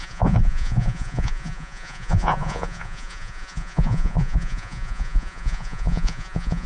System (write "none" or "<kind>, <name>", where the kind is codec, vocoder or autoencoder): vocoder, Vocos